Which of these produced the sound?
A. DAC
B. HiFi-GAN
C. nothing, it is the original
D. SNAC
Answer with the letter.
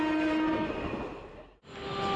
C